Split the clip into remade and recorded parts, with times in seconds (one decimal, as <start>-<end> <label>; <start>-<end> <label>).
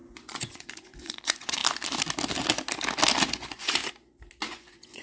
0.0-1.6 remade; 1.6-3.3 recorded; 3.3-3.8 remade; 3.8-4.5 recorded; 4.5-5.0 remade